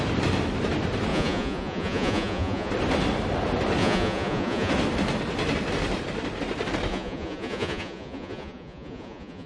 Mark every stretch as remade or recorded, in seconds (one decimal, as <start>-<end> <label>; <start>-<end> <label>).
0.0-1.1 recorded; 1.1-2.7 remade; 2.7-3.8 recorded; 3.8-4.7 remade; 4.7-6.9 recorded; 6.9-9.5 remade